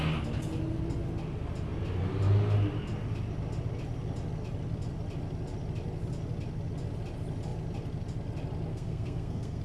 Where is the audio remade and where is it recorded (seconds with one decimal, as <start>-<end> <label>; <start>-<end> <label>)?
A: 0.0-8.7 recorded; 8.7-9.6 remade